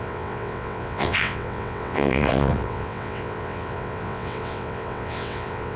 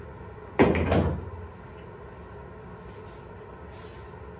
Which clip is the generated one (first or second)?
first